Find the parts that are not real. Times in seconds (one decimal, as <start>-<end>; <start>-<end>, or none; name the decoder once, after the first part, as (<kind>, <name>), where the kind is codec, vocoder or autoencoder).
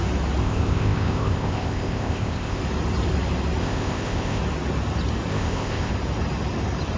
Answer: 0.4-2.6 (codec, ZipCodec); 3.6-4.4; 5.3-5.9